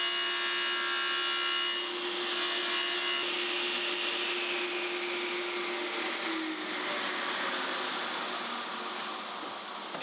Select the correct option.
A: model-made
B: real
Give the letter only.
B